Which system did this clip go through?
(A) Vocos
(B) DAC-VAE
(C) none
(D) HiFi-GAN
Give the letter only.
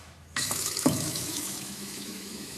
B